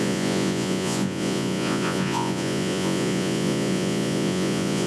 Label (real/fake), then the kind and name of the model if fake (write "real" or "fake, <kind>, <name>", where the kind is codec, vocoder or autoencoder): fake, vocoder, Vocos